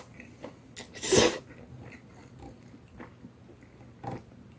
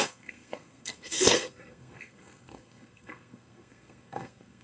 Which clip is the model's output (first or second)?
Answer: second